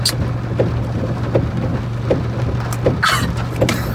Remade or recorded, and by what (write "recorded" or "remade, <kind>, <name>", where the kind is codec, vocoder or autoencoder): recorded